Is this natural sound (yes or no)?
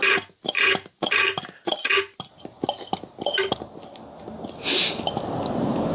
yes